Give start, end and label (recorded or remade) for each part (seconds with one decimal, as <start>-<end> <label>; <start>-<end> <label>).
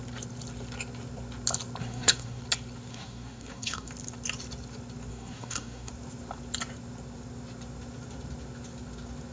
0.0-1.8 recorded; 1.8-2.4 remade; 2.4-2.9 recorded; 2.9-3.9 remade; 3.9-5.1 recorded; 5.1-5.9 remade; 5.9-9.3 recorded